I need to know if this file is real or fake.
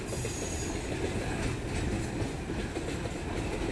real